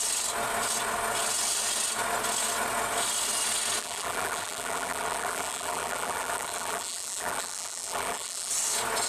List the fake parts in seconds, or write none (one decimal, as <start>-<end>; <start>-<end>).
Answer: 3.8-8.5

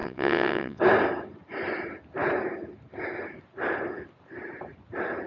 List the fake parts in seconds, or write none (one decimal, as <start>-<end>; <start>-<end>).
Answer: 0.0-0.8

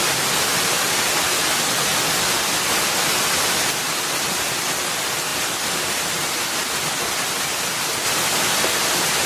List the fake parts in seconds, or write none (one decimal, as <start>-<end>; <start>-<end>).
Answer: none

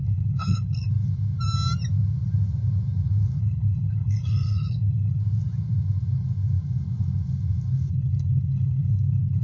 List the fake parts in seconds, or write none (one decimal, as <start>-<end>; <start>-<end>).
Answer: 0.0-0.9; 3.4-5.2; 7.9-9.4